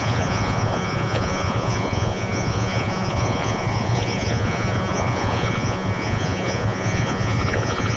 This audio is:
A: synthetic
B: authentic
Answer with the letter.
A